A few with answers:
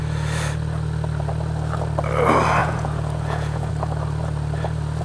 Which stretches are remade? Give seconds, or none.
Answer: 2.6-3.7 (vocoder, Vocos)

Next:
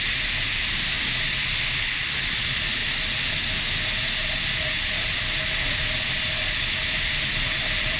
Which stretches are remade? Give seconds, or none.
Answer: none

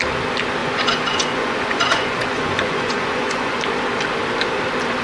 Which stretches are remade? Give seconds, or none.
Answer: 0.6-3.6 (vocoder, Vocos)

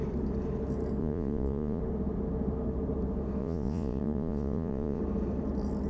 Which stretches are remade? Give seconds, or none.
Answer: 1.0-1.8 (vocoder, Vocos); 3.4-5.0

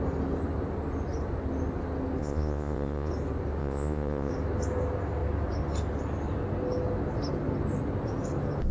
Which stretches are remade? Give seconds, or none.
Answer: 2.2-3.1 (vocoder, Vocos); 3.6-4.3